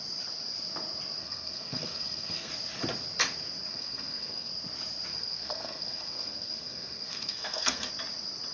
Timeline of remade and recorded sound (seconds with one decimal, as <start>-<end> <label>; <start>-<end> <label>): 0.0-1.2 recorded; 1.2-2.5 remade; 2.5-3.7 recorded; 3.7-4.5 remade; 4.5-5.1 recorded; 5.1-7.9 remade; 7.9-8.5 recorded